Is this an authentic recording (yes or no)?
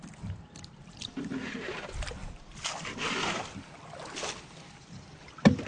yes